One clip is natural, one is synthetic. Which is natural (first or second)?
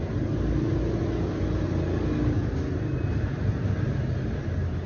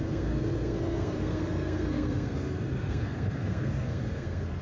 first